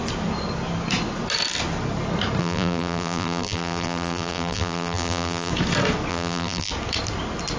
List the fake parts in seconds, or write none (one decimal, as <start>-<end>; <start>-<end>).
2.4-5.5; 6.1-6.7